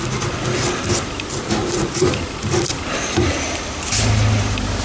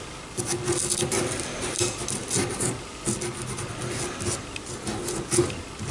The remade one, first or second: first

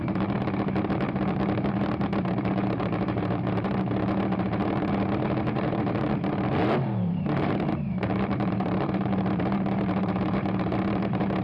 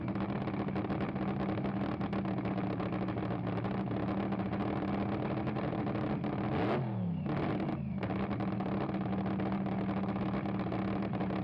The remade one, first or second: first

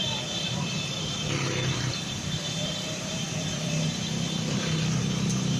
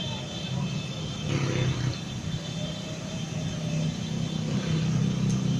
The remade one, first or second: first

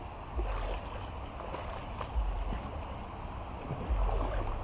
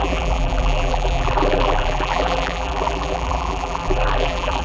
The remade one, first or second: second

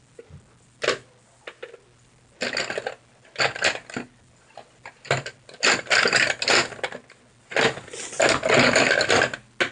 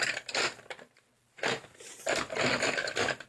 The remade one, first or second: second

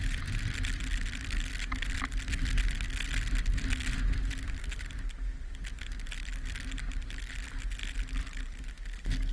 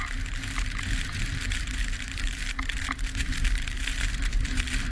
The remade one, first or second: second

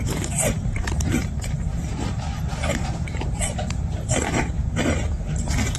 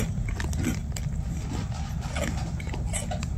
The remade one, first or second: first